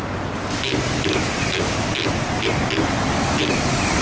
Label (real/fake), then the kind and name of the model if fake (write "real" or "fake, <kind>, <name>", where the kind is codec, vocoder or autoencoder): real